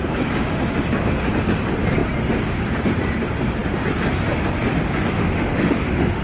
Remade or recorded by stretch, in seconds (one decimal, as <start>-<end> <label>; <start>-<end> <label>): 0.0-5.2 recorded; 5.2-6.2 remade